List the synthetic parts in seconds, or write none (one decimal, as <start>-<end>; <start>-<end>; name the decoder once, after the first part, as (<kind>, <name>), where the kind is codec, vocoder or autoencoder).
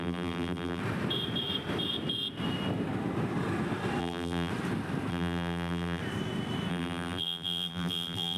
0.0-0.8 (vocoder, BigVGAN v2); 4.0-4.5; 5.1-6.0; 6.7-8.4